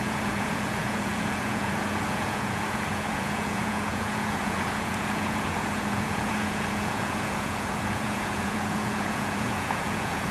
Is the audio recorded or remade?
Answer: remade